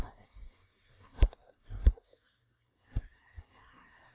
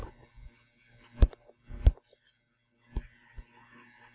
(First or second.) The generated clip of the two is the first